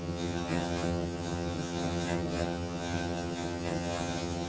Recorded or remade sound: remade